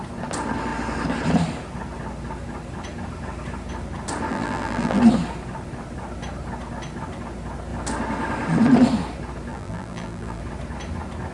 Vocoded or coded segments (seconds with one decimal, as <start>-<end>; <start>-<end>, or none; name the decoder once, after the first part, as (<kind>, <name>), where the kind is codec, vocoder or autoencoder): 4.3-5.0 (vocoder, BigVGAN v2); 9.5-10.4